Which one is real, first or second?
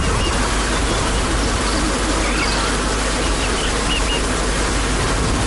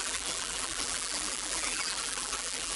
first